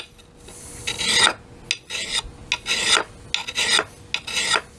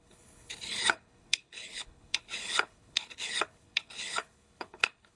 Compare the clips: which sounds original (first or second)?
first